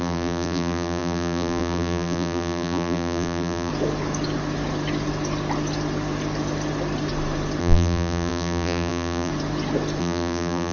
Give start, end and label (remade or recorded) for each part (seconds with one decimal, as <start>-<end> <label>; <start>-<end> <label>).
0.0-3.7 remade; 3.7-7.6 recorded; 7.6-9.3 remade; 9.3-10.0 recorded; 10.0-10.7 remade